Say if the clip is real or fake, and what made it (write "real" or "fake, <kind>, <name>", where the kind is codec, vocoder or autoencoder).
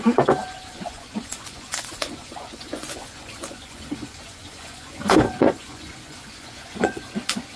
fake, vocoder, Vocos